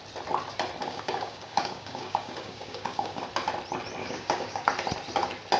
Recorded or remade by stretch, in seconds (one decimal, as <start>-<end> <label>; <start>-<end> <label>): 0.0-0.8 recorded; 0.8-3.2 remade; 3.2-4.0 recorded; 4.0-4.7 remade; 4.7-5.6 recorded